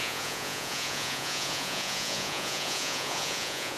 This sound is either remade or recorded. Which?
remade